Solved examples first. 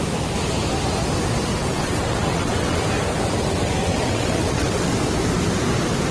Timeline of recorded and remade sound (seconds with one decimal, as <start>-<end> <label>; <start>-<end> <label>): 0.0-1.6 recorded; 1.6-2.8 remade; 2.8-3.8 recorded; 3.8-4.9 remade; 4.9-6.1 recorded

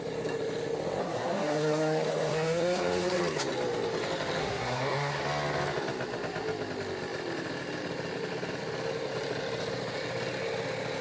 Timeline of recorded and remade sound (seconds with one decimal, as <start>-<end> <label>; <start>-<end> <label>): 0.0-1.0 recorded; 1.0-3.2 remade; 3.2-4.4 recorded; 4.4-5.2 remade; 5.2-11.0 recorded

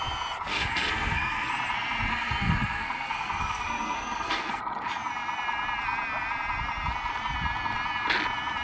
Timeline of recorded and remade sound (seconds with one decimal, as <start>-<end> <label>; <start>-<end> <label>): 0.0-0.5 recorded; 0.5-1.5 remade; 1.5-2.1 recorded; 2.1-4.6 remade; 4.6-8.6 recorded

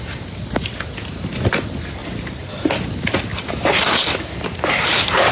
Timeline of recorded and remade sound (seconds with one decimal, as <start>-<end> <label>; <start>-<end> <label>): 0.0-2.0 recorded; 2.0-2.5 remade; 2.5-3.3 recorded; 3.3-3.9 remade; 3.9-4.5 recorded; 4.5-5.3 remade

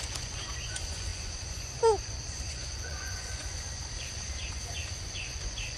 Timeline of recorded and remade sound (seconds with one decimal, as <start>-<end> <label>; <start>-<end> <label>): 0.0-5.8 remade

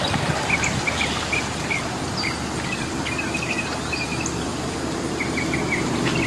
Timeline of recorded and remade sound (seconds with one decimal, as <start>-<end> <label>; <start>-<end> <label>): 0.0-4.5 recorded; 4.5-5.4 remade; 5.4-6.3 recorded

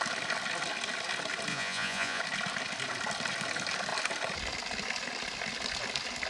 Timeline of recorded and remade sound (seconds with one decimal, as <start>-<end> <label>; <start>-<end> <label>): 0.0-1.5 recorded; 1.5-2.2 remade; 2.2-6.3 recorded

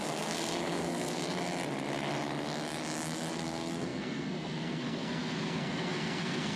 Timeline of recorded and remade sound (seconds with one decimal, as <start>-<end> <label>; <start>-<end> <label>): 0.0-1.2 remade; 1.2-3.3 recorded; 3.3-6.6 remade